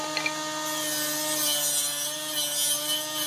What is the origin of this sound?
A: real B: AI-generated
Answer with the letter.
A